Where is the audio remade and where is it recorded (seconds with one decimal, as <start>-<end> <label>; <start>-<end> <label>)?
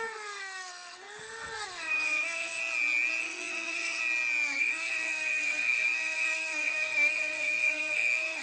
0.0-2.6 remade; 2.6-3.2 recorded; 3.2-4.0 remade; 4.0-4.6 recorded; 4.6-8.4 remade